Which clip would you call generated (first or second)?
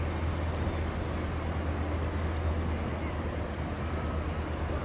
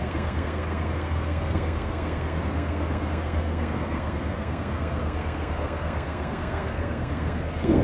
second